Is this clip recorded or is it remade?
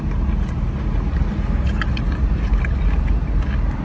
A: recorded